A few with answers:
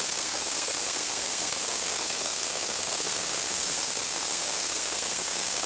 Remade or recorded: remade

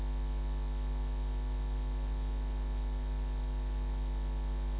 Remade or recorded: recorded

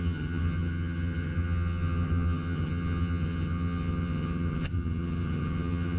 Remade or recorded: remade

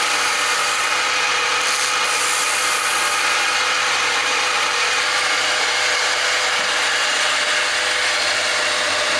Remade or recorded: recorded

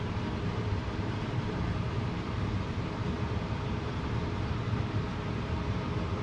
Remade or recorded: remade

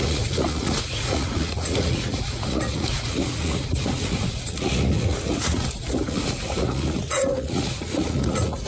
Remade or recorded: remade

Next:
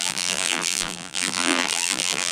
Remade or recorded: remade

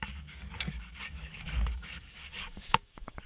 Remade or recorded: remade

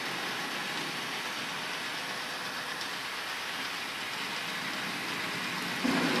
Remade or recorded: remade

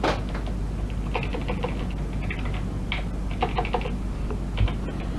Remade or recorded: recorded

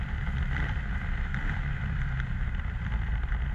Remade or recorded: remade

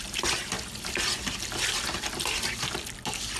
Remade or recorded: recorded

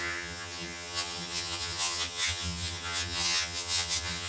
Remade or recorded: remade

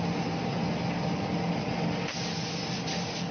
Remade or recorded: recorded